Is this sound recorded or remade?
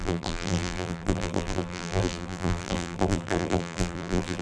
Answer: remade